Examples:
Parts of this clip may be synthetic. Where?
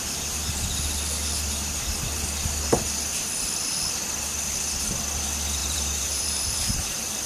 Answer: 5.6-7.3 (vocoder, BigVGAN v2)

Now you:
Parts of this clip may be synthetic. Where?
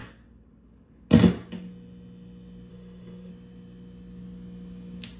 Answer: 2.7-3.3 (autoencoder, DAC-VAE)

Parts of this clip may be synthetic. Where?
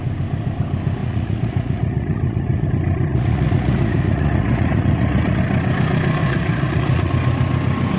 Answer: 1.0-2.7 (vocoder, Vocos); 3.1-5.4; 6.2-7.1